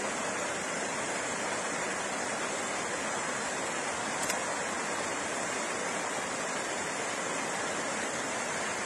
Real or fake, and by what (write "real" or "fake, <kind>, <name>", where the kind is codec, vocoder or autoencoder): real